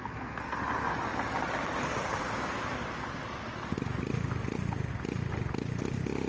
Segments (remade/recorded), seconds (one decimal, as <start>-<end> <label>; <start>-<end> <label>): 0.0-0.6 remade; 0.6-6.3 recorded